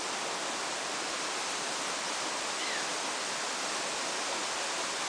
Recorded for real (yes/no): yes